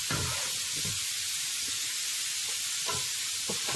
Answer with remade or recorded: recorded